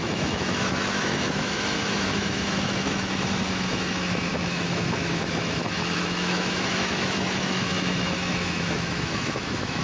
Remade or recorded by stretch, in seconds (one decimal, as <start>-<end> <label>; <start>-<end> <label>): 0.0-9.8 remade